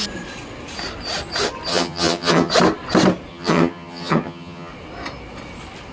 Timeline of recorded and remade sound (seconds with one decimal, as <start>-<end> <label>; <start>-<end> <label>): 0.0-1.7 recorded; 1.7-2.5 remade; 2.5-3.3 recorded; 3.3-4.7 remade; 4.7-5.9 recorded

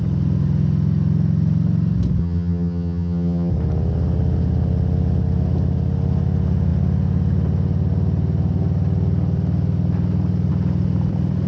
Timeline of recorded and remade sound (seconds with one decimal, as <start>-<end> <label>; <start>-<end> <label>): 0.0-2.2 recorded; 2.2-3.5 remade; 3.5-11.5 recorded

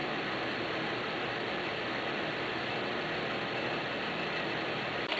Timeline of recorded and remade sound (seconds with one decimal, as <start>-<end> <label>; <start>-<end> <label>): 0.0-5.2 recorded

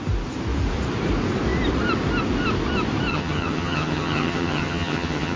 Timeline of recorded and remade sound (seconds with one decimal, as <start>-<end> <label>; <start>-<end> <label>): 0.0-3.1 recorded; 3.1-5.4 remade

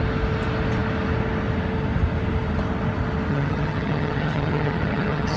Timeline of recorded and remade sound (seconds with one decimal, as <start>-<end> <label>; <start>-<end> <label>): 0.0-3.3 recorded; 3.3-5.4 remade

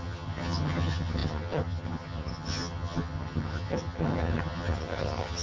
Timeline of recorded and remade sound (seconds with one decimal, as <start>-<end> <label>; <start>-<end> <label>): 0.0-5.4 remade

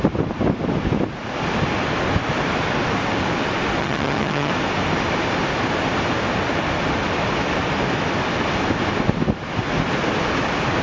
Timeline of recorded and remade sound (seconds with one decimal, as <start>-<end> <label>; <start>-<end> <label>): 0.0-3.8 recorded; 3.8-4.5 remade; 4.5-10.8 recorded